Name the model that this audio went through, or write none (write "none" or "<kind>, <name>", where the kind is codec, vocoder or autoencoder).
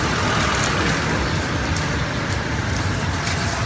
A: none